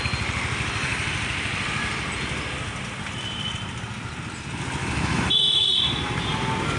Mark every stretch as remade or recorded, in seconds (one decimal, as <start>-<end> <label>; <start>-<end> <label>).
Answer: 0.0-4.8 recorded; 4.8-5.7 remade; 5.7-6.8 recorded